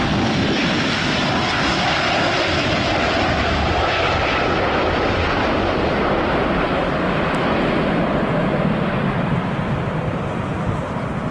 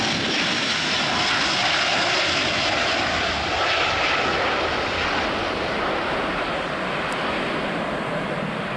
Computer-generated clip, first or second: first